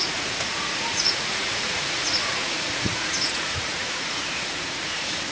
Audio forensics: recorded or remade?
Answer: remade